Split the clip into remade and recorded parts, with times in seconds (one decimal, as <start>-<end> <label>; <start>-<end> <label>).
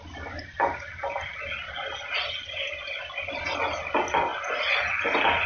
0.0-5.5 recorded